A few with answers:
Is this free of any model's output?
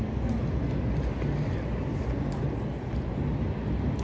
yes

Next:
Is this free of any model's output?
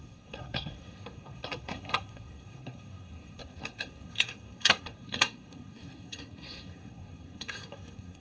no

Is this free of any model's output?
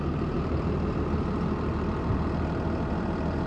yes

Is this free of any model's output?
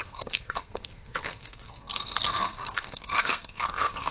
no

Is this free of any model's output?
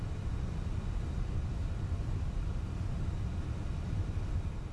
no